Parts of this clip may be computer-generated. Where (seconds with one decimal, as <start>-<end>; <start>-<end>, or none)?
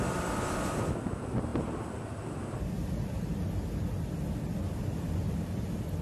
none